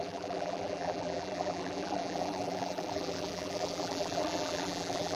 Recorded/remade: remade